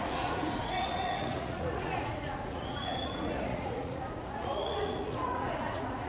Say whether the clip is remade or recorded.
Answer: remade